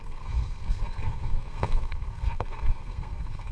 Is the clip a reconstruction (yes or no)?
yes